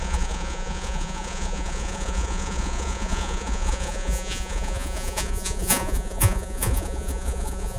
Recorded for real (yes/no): no